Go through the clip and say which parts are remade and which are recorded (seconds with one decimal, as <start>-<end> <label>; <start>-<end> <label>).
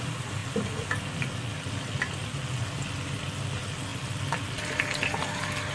0.0-5.7 recorded